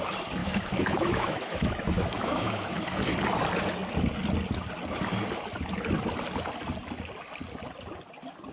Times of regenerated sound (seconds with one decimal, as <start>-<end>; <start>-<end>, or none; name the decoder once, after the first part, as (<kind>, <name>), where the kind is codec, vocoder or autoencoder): 0.4-3.1 (autoencoder, DAC-VAE)